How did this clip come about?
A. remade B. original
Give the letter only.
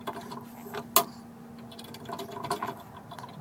B